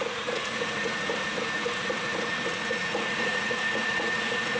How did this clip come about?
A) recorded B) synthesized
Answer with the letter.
B